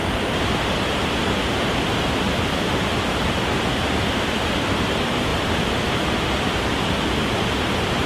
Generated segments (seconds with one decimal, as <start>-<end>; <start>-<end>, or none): 0.0-1.4; 2.4-5.3